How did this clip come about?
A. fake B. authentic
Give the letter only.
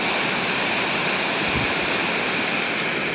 B